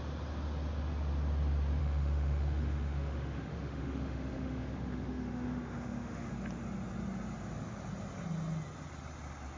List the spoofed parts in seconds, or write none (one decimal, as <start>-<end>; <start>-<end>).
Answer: 1.8-6.3